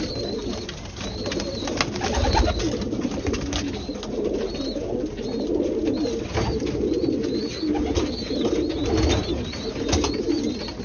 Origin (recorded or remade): recorded